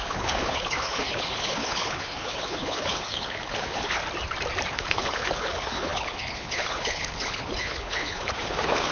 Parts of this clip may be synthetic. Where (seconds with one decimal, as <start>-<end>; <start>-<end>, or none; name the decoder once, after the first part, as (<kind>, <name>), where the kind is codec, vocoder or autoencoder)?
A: 0.0-4.0 (codec, HILCodec); 4.7-8.9